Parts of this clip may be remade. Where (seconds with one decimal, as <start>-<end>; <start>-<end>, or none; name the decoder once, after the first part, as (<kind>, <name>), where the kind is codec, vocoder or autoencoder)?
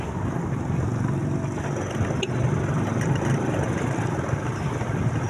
none